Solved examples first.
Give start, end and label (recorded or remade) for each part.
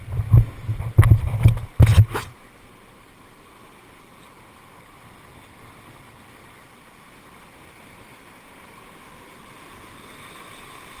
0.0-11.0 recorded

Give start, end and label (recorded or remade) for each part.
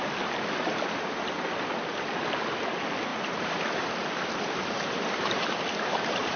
0.0-3.1 recorded; 3.1-6.4 remade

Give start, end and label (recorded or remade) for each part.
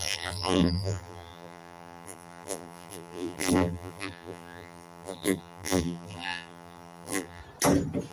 0.0-7.4 remade; 7.4-8.1 recorded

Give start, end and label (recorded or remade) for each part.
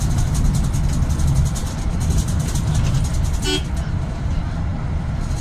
0.0-1.6 recorded; 1.6-2.7 remade; 2.7-5.4 recorded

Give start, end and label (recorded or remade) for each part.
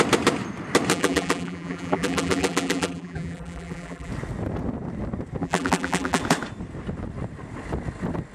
0.0-0.9 recorded; 0.9-4.1 remade; 4.1-5.4 recorded; 5.4-6.2 remade; 6.2-8.3 recorded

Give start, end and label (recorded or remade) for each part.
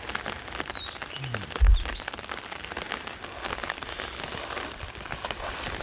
0.0-5.8 recorded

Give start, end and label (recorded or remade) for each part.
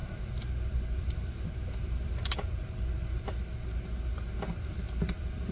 0.0-3.2 remade; 3.2-5.5 recorded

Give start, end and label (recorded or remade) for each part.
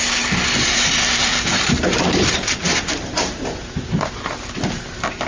0.0-1.3 recorded; 1.3-4.5 remade; 4.5-5.3 recorded